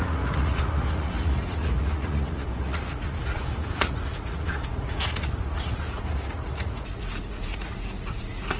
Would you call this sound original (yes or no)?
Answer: no